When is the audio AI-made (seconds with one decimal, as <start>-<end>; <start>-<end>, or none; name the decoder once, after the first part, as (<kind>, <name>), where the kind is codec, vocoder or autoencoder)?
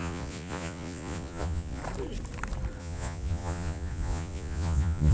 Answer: 0.0-1.8 (vocoder, Vocos); 2.8-5.1